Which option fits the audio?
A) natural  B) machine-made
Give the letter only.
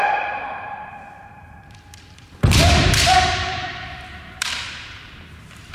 B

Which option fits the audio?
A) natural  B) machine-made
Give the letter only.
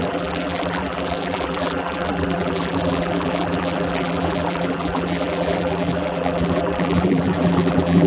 B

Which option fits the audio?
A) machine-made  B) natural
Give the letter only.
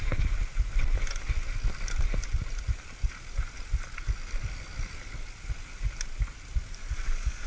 B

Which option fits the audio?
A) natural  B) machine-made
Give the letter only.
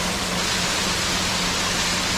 A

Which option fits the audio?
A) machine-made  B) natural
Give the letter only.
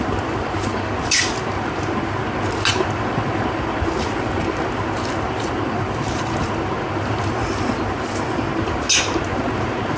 B